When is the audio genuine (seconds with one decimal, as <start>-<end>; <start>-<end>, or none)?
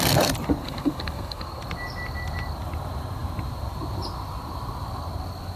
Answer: 0.0-0.6; 1.6-5.6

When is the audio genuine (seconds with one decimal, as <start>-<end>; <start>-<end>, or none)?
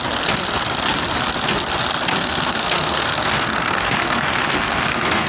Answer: 0.0-2.1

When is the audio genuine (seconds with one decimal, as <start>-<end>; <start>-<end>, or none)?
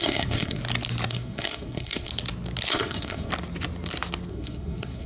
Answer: 0.6-1.1; 2.1-2.7; 3.3-4.3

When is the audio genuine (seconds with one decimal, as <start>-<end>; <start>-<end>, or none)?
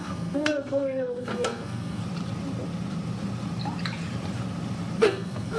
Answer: 2.0-5.0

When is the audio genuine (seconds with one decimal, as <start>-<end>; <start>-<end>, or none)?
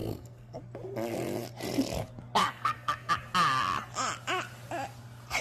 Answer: 0.6-2.4; 3.1-5.4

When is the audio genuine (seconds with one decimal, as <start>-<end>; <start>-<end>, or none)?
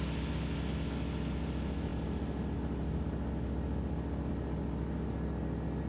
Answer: 0.0-5.9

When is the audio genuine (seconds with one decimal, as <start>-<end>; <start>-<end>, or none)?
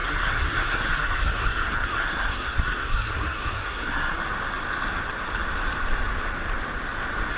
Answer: 4.2-7.4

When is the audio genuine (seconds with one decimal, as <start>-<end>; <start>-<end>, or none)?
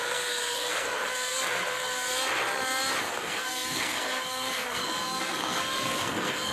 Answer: 2.1-3.0